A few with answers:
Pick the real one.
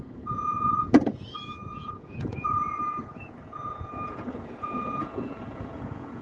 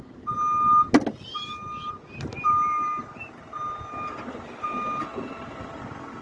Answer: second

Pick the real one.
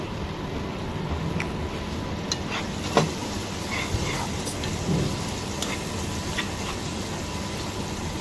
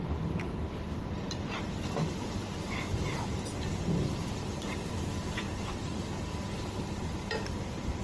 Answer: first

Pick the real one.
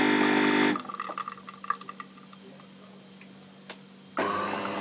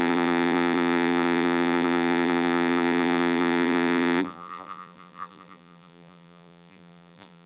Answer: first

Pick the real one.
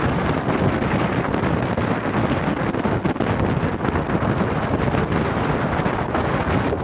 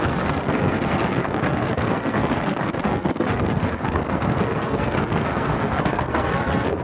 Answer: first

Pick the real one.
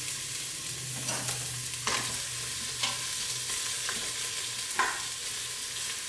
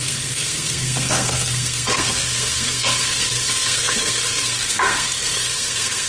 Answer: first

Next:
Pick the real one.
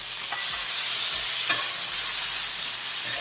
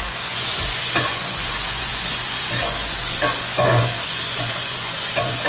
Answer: first